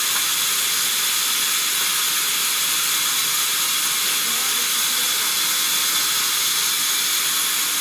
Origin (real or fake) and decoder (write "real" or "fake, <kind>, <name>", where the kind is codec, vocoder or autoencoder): real